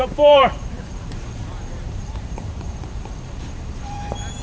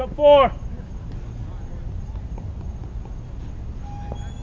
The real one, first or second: second